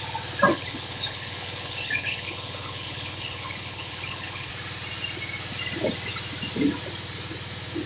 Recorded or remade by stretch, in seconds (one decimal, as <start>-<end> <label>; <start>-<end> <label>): 0.0-0.5 recorded; 0.5-4.5 remade; 4.5-7.9 recorded